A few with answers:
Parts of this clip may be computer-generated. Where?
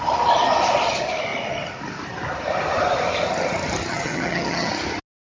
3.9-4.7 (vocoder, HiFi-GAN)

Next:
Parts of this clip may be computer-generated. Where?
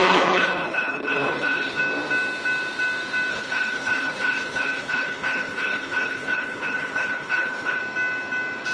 0.0-1.8 (codec, HILCodec); 3.3-7.8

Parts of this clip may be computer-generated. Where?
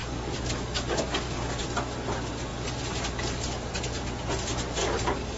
0.0-1.6 (codec, DAC); 4.8-5.4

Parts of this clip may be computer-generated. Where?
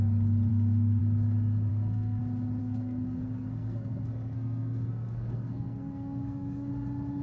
0.5-1.0 (codec, SNAC); 1.7-2.2; 2.6-6.7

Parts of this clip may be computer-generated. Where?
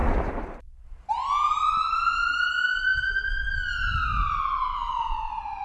none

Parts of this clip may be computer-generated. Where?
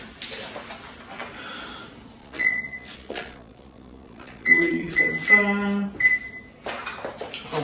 2.2-5.0 (vocoder, Vocos)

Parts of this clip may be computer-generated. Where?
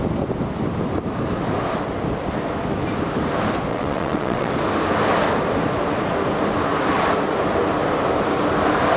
3.7-4.5 (vocoder, WaveNeXt)